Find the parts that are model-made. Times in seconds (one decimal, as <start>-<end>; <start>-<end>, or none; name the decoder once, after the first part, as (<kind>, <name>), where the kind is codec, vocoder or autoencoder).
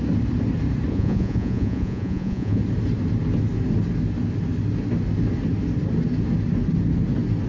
0.9-2.6 (vocoder, Vocos)